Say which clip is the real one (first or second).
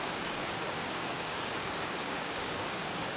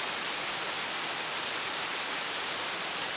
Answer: second